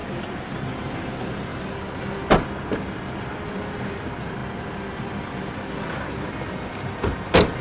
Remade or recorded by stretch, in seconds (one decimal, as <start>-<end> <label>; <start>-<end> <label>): 0.0-7.6 recorded